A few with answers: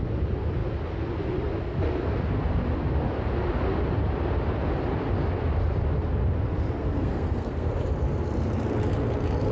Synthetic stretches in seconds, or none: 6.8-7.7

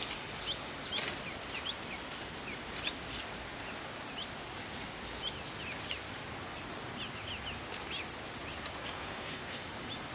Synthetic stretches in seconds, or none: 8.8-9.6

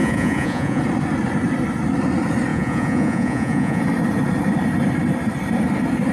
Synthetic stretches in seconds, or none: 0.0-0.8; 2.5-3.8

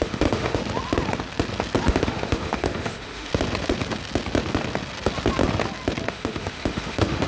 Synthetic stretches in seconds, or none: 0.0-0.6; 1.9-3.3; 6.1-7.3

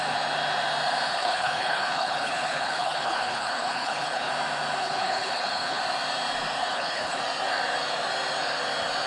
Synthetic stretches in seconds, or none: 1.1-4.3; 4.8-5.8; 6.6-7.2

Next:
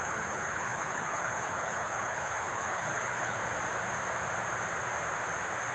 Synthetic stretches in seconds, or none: 0.0-3.4

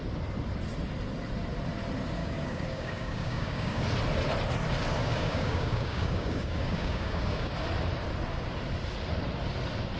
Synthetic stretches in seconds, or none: 2.2-3.8; 5.0-7.5